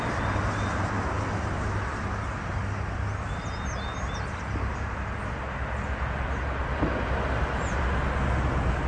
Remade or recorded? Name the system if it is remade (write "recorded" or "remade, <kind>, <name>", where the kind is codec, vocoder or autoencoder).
recorded